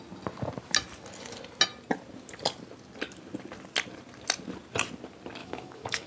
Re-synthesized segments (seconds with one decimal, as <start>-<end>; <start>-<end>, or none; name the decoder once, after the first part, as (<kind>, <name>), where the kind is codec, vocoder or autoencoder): 5.4-6.1 (autoencoder, DAC-VAE)